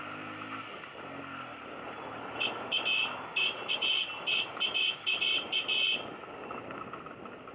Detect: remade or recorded recorded